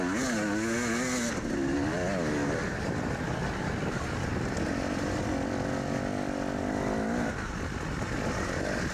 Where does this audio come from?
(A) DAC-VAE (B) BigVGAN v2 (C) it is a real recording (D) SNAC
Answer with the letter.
C